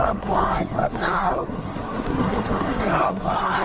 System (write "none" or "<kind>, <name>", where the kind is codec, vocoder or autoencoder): codec, SNAC